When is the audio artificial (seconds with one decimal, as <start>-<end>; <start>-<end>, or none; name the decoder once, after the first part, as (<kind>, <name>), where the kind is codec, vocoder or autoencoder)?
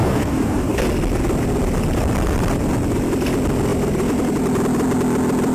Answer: 0.0-0.8 (codec, DAC)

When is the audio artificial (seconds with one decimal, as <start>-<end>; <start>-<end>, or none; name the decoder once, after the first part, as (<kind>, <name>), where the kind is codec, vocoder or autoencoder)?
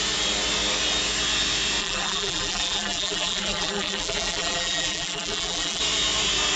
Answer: 1.8-5.8 (vocoder, BigVGAN v2)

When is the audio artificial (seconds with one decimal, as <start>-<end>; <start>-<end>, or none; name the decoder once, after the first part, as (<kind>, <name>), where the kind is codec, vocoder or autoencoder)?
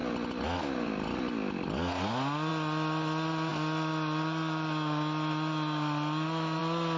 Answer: none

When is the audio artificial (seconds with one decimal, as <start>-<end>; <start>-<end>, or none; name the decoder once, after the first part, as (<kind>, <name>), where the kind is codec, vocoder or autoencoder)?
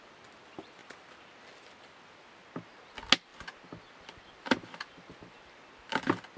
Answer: none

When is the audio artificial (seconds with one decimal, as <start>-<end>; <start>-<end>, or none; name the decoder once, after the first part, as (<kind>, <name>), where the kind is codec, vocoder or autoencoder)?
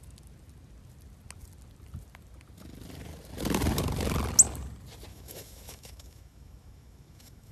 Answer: 5.1-7.5 (autoencoder, DAC-VAE)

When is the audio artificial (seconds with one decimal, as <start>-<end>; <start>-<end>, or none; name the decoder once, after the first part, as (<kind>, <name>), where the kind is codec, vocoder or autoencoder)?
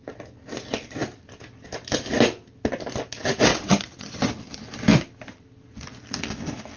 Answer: 3.5-4.3 (vocoder, WaveNeXt)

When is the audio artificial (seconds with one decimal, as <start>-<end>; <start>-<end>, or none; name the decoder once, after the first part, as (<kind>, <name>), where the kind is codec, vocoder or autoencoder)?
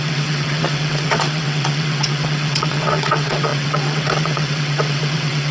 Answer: 0.0-5.5 (vocoder, WaveNeXt)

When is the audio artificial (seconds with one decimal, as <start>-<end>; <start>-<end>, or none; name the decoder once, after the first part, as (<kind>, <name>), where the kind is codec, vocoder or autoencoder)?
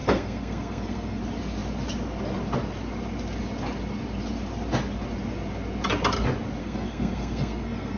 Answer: 0.0-1.2 (codec, SNAC); 6.6-8.0